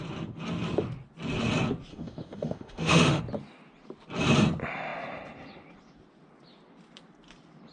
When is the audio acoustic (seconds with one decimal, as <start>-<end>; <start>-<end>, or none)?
0.0-1.9; 3.2-7.7